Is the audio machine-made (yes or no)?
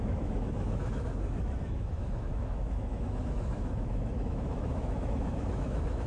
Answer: yes